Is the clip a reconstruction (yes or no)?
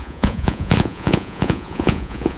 yes